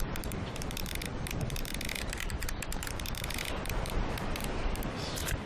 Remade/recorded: remade